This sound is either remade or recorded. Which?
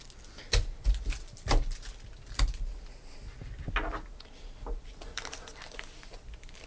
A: recorded